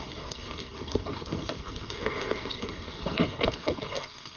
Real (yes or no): no